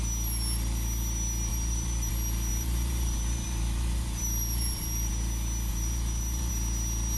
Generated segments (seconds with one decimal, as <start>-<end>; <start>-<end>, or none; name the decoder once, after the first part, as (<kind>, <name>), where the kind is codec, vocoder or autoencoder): 1.5-2.1 (vocoder, BigVGAN v2); 2.5-5.1; 5.7-6.5